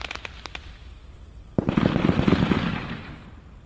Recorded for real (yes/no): yes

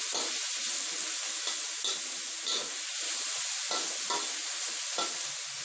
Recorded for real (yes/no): yes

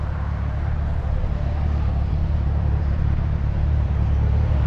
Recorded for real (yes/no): no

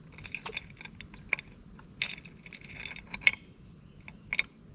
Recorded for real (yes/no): yes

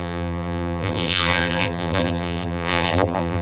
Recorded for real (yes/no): no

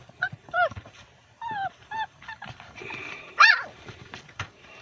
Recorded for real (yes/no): no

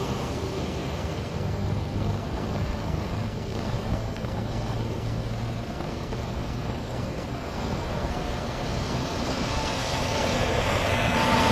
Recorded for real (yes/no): no